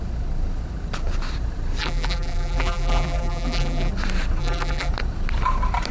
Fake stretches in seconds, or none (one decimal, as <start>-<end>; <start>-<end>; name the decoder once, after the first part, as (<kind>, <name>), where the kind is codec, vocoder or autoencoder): 1.8-3.9 (vocoder, BigVGAN v2); 4.4-4.9